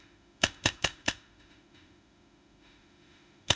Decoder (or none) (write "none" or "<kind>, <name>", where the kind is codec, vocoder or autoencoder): autoencoder, DAC-VAE